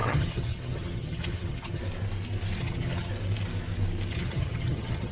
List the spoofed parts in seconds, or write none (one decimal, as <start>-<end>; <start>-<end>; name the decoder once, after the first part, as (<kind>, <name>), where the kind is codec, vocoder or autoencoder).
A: 0.0-1.8 (vocoder, HiFi-GAN); 2.6-3.1; 4.1-5.1